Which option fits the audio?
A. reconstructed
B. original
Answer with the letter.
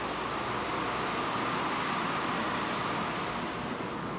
B